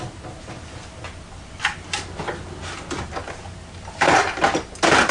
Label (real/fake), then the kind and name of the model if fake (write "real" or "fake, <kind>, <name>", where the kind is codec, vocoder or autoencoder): real